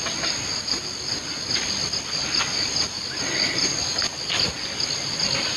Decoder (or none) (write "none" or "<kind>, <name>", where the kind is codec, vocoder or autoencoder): none